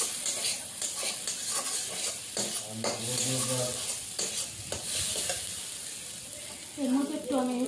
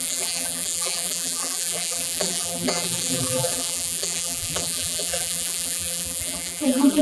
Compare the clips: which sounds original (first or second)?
first